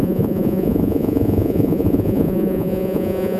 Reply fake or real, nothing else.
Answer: fake